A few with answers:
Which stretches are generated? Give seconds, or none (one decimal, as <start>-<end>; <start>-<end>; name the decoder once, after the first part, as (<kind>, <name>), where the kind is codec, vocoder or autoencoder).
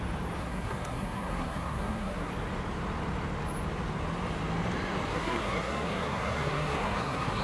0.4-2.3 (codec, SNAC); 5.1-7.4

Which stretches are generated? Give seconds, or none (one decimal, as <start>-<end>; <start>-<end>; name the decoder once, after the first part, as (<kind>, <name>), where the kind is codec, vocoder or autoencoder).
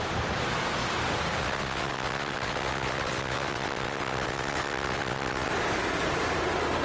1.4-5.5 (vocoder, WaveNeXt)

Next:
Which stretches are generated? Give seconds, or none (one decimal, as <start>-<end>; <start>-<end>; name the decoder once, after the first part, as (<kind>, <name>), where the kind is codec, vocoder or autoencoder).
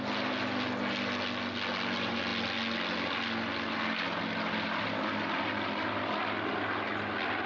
none